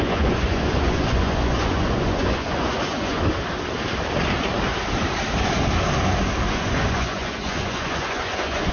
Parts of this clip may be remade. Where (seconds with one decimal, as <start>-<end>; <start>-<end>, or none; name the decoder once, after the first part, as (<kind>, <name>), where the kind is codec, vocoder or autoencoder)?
0.0-3.2 (vocoder, Vocos); 6.5-8.7